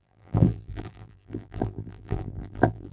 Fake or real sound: fake